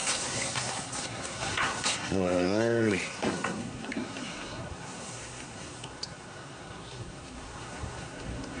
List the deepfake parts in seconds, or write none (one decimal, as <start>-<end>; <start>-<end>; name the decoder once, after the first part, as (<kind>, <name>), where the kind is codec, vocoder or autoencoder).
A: 0.0-8.6 (codec, SNAC)